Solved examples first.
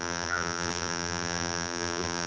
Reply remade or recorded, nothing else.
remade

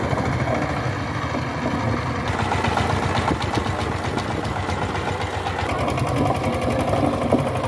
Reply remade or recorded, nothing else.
recorded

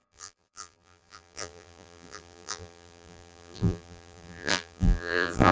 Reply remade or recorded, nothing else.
remade